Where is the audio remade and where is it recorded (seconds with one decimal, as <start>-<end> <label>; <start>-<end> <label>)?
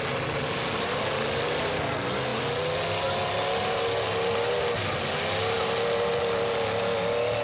0.0-7.4 recorded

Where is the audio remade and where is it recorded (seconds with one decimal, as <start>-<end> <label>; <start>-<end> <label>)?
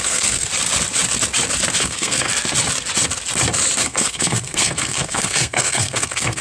0.0-0.5 remade; 0.5-1.8 recorded; 1.8-2.3 remade; 2.3-3.8 recorded; 3.8-6.4 remade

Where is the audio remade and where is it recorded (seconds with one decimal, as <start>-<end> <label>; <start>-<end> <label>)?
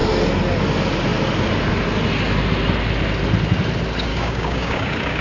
0.0-4.1 recorded; 4.1-5.2 remade